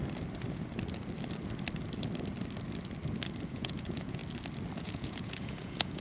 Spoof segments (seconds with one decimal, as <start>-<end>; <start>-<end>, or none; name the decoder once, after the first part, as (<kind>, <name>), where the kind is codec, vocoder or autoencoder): 3.5-4.2 (vocoder, Vocos); 4.8-6.0